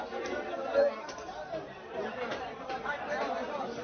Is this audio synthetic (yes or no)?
yes